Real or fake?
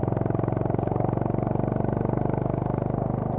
real